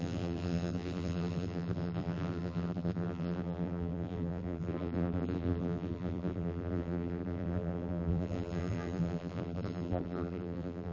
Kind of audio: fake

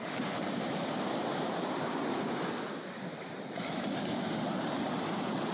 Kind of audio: real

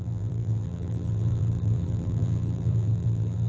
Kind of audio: fake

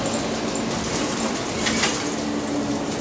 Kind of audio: real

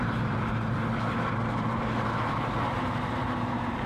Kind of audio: fake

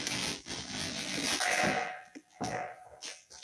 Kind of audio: fake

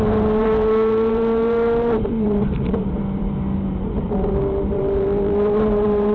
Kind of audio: fake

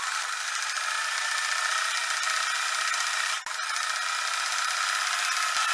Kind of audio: real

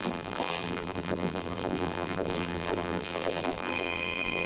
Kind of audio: fake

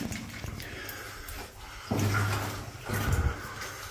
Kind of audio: real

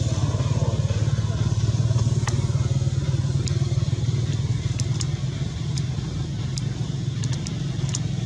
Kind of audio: real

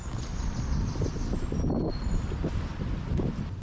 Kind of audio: real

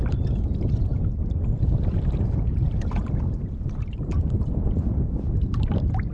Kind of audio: fake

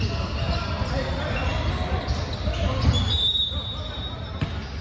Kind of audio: real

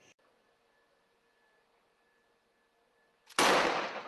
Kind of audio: real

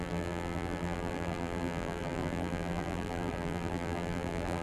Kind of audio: fake